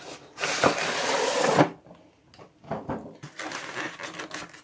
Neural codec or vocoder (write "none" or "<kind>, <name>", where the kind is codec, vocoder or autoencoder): none